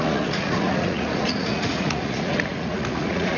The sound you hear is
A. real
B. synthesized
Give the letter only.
B